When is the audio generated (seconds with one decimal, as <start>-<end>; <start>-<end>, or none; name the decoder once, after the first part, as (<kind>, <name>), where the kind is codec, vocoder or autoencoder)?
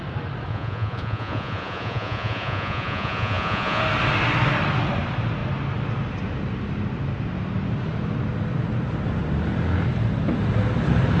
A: 0.5-3.8 (vocoder, Vocos)